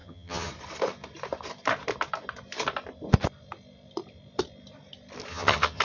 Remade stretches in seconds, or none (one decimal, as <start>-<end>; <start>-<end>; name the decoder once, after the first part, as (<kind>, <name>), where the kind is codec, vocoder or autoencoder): 0.0-0.5 (vocoder, HiFi-GAN); 5.3-5.8